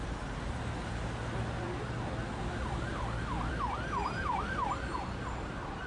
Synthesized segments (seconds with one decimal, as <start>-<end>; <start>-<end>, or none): none